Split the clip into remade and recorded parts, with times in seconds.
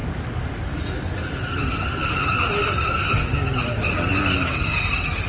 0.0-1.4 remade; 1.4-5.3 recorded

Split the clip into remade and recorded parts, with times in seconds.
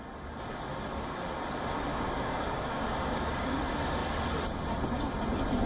0.0-1.9 recorded; 1.9-3.6 remade; 3.6-5.7 recorded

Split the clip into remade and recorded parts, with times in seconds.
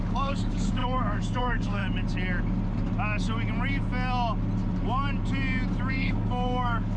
0.0-1.8 remade; 1.8-5.9 recorded; 5.9-7.0 remade